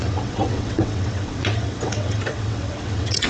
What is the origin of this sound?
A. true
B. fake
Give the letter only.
B